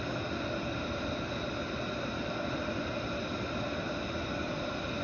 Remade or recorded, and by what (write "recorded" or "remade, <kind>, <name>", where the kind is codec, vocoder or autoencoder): recorded